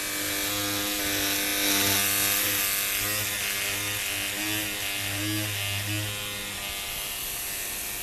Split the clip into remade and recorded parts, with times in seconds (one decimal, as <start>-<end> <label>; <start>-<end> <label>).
0.0-8.0 recorded